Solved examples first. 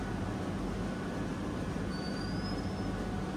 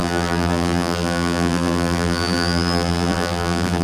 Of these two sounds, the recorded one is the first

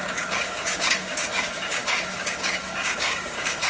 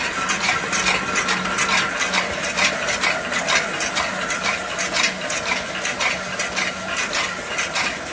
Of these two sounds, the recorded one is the second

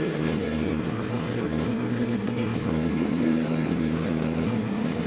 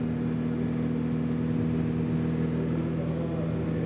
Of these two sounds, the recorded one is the second